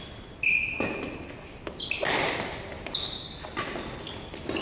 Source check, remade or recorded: recorded